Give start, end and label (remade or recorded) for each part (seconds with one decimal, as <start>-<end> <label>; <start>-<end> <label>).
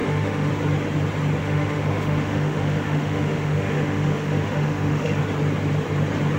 0.0-0.5 remade; 0.5-1.4 recorded; 1.4-5.2 remade; 5.2-6.4 recorded